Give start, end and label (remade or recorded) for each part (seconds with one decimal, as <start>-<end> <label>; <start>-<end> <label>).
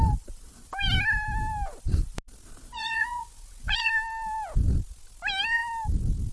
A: 0.0-2.7 recorded; 2.7-3.9 remade; 3.9-6.3 recorded